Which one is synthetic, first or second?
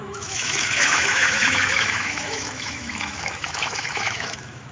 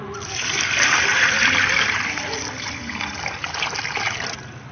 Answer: first